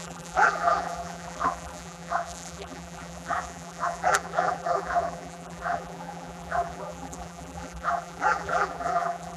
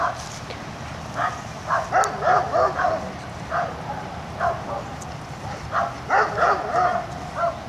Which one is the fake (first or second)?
first